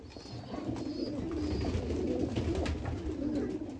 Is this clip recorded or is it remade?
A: recorded